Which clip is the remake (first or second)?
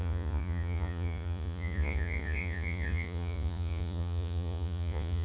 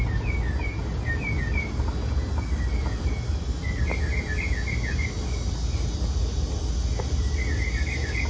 first